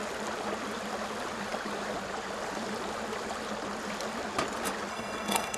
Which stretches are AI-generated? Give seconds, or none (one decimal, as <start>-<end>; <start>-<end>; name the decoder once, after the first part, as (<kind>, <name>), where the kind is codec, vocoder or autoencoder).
4.9-5.6 (codec, SNAC)